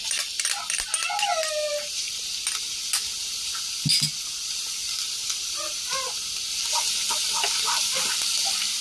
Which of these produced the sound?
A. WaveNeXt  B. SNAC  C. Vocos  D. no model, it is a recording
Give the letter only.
D